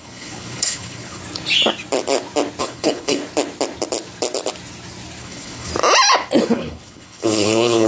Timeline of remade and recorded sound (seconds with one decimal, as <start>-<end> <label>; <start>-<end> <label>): 0.0-1.2 remade; 1.2-2.6 recorded; 2.6-3.2 remade; 3.2-5.2 recorded; 5.2-5.7 remade; 5.7-6.4 recorded; 6.4-7.9 remade

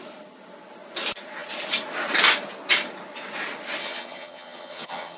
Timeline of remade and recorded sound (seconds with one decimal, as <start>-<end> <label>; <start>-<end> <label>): 0.0-3.8 recorded; 3.8-5.2 remade